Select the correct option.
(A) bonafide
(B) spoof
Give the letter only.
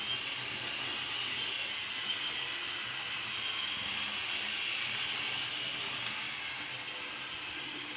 A